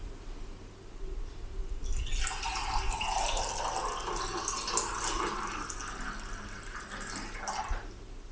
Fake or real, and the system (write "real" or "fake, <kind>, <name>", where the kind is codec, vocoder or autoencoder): real